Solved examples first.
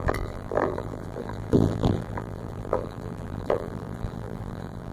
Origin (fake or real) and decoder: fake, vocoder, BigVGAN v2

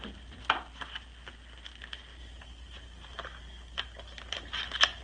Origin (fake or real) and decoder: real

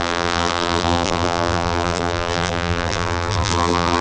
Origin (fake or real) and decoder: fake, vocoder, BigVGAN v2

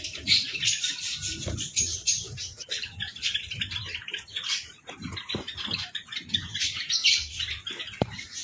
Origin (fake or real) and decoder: fake, vocoder, BigVGAN v2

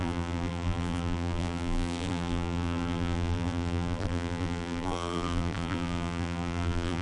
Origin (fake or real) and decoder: fake, vocoder, BigVGAN v2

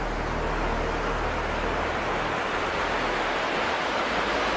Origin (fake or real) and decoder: real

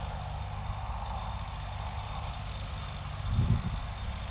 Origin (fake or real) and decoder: real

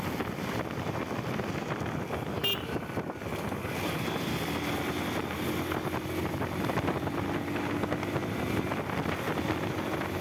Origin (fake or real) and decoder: real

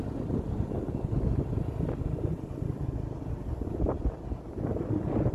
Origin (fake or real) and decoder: real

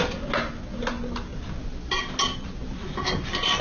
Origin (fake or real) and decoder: real